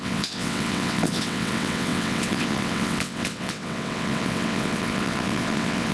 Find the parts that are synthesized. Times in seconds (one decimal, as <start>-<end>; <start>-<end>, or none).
0.0-5.9